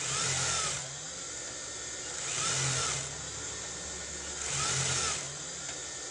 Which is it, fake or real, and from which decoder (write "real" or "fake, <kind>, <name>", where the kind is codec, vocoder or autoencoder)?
real